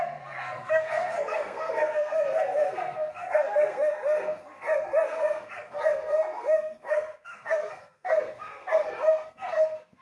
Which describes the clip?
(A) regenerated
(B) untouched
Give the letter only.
A